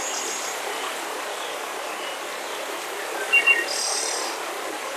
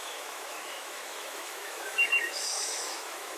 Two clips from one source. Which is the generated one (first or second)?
second